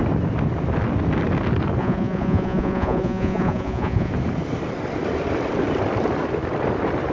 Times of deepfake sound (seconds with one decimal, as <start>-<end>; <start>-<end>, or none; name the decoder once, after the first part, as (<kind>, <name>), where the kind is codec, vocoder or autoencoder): 1.8-4.1 (vocoder, Vocos)